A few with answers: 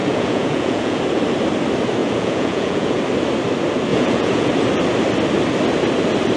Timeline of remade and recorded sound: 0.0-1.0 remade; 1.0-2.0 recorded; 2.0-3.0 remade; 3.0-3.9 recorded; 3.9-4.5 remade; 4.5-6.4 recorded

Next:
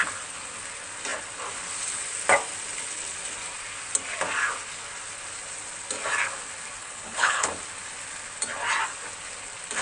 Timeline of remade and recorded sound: 0.0-6.8 recorded; 6.8-7.5 remade; 7.5-9.8 recorded

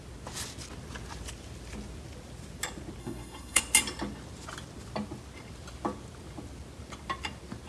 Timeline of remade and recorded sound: 0.0-3.0 recorded; 3.0-3.6 remade; 3.6-7.7 recorded

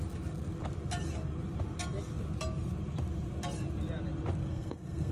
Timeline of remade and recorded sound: 0.0-4.4 recorded; 4.4-5.1 remade

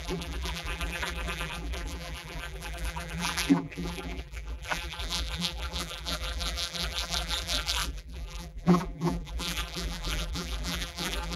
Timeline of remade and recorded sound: 0.0-11.4 remade

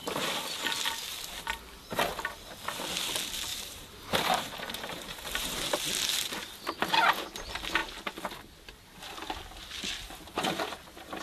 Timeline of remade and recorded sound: 0.0-3.5 recorded; 3.5-5.7 remade; 5.7-10.3 recorded; 10.3-11.2 remade

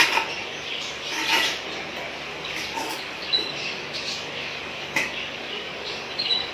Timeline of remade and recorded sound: 0.0-0.4 recorded; 0.4-1.2 remade; 1.2-2.3 recorded; 2.3-6.5 remade